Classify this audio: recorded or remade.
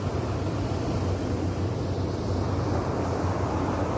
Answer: recorded